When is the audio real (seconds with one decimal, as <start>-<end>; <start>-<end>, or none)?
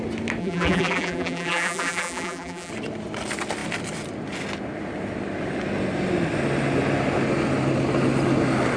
0.0-0.4; 2.7-8.8